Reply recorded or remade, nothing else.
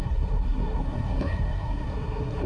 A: remade